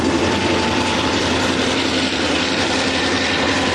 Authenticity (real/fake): fake